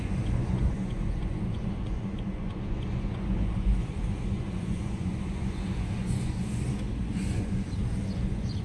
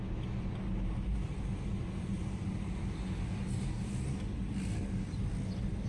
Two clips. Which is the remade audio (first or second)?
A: first